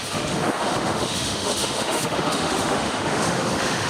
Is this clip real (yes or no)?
no